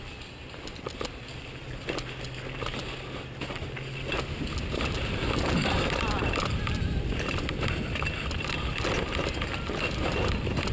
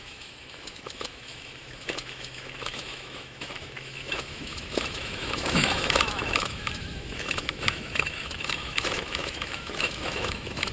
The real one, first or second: first